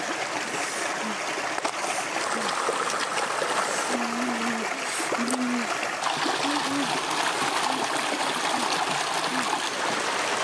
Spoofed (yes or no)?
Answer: no